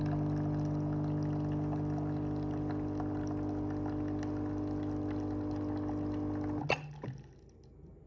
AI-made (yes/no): no